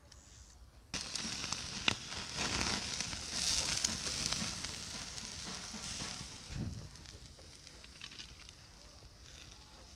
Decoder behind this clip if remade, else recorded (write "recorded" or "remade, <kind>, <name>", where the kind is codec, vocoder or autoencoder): recorded